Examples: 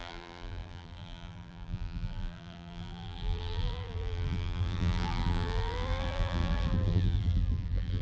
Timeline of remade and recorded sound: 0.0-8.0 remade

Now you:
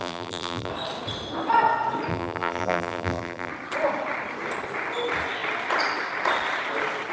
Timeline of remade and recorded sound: 0.0-0.7 remade; 0.7-2.1 recorded; 2.1-3.5 remade; 3.5-7.1 recorded

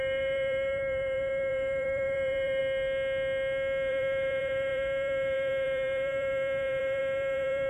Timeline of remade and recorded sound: 0.0-2.6 remade; 2.6-3.9 recorded; 3.9-7.7 remade

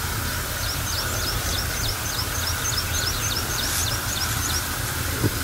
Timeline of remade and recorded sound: 0.0-5.4 recorded

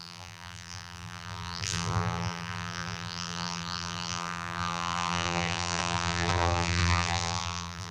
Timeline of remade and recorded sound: 0.0-7.9 remade

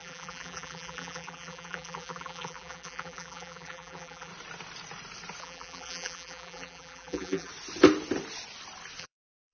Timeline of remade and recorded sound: 0.0-4.3 remade; 4.3-5.4 recorded; 5.4-7.5 remade; 7.5-9.0 recorded; 9.0-9.5 remade

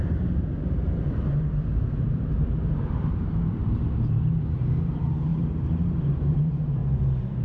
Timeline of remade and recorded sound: 0.0-6.8 remade; 6.8-7.4 recorded